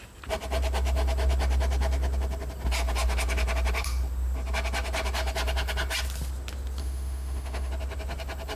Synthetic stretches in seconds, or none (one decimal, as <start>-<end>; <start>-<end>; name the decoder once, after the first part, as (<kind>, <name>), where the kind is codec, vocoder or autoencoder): 6.8-7.7 (autoencoder, DAC-VAE)